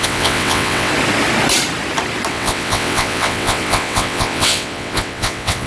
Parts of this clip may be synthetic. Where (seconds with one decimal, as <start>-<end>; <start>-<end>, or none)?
0.0-0.9; 2.3-5.7